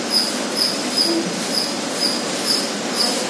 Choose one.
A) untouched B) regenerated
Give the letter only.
A